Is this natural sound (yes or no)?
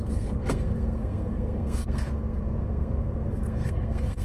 no